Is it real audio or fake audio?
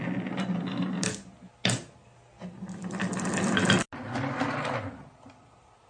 real